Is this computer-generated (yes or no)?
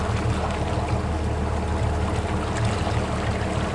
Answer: no